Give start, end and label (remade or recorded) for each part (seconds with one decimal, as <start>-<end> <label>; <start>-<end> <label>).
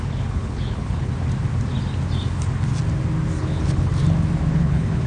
0.0-1.1 remade; 1.1-3.4 recorded; 3.4-3.9 remade; 3.9-4.5 recorded; 4.5-5.1 remade